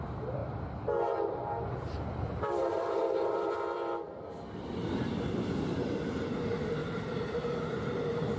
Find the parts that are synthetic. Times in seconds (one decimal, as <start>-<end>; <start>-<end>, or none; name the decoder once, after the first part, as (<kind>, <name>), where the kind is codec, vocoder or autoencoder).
0.0-0.4 (vocoder, BigVGAN v2); 1.7-8.4